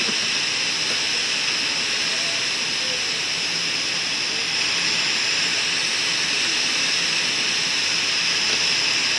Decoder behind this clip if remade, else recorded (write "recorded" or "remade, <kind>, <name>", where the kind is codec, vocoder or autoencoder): recorded